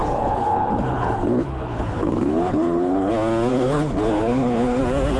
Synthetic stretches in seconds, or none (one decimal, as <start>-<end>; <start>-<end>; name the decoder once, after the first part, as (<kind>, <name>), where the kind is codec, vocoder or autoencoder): 0.0-3.1 (codec, HILCodec); 3.5-4.8